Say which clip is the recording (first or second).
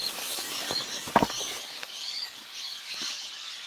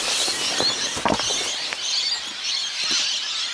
second